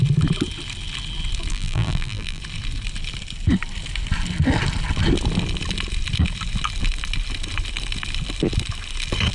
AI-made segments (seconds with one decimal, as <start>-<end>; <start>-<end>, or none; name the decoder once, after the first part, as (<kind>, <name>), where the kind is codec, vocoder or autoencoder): 1.5-2.4 (vocoder, BigVGAN v2)